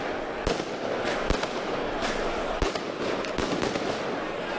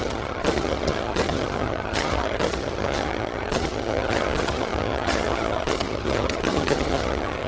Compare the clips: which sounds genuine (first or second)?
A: first